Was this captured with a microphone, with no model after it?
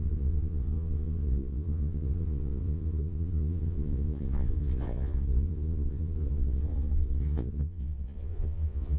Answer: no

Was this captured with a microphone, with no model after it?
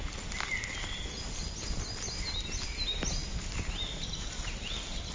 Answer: yes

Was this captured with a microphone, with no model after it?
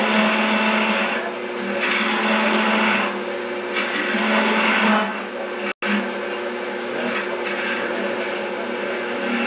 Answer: yes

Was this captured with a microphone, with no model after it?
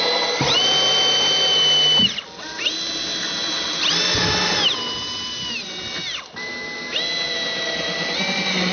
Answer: yes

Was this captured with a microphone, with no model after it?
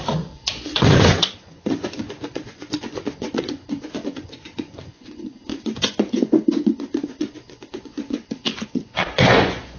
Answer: no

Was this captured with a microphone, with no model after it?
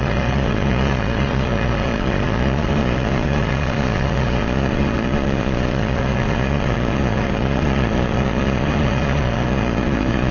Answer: no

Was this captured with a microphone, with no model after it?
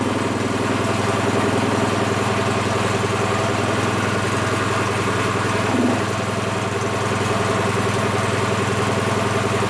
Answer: yes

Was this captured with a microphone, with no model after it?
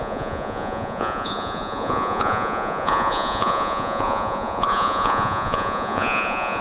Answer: no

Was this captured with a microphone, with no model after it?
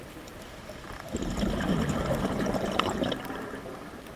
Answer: yes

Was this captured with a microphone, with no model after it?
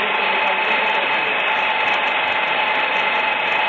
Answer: yes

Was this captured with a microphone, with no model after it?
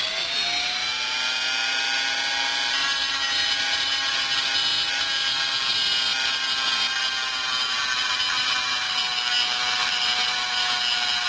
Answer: yes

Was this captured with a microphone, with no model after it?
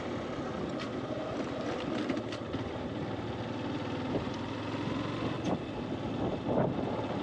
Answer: yes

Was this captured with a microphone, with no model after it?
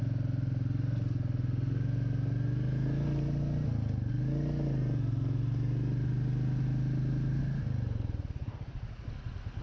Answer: yes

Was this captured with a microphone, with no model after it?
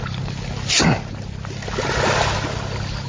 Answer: yes